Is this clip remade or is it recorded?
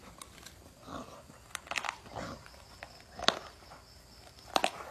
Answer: recorded